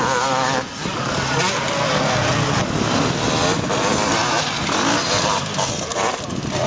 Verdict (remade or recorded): recorded